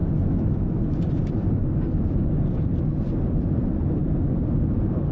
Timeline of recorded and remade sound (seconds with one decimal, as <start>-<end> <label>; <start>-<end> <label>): 0.0-5.1 recorded